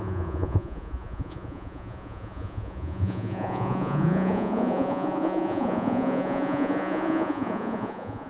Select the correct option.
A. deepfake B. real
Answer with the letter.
A